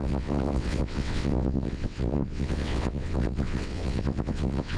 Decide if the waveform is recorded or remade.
remade